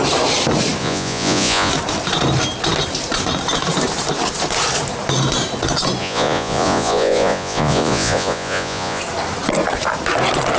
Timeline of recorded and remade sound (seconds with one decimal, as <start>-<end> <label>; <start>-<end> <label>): 0.0-0.8 recorded; 0.8-1.7 remade; 1.7-6.0 recorded; 6.0-9.0 remade; 9.0-10.6 recorded